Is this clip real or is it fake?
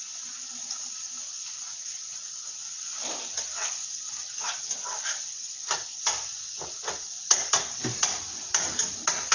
real